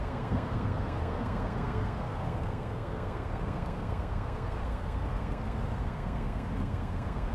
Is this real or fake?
fake